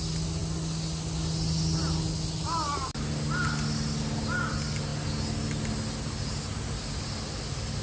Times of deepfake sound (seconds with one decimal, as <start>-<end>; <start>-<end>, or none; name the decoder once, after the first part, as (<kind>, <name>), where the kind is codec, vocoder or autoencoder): none